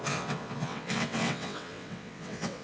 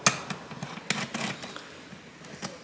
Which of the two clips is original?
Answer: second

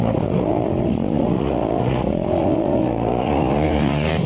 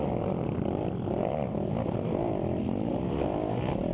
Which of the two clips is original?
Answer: second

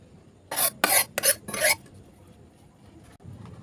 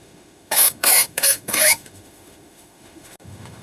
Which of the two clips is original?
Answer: first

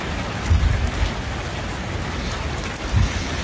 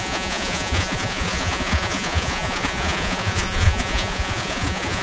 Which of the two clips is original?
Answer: first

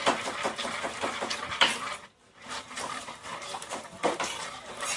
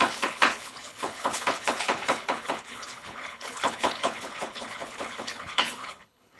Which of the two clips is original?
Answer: first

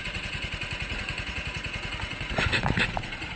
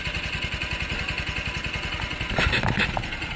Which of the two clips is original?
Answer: second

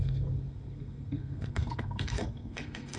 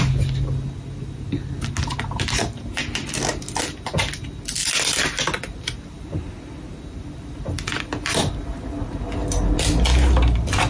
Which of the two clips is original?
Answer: second